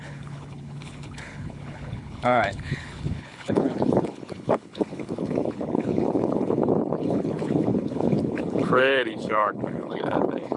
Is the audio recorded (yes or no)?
no